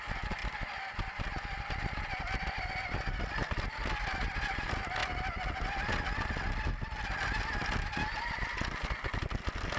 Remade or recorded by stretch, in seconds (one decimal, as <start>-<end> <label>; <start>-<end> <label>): 0.0-9.8 recorded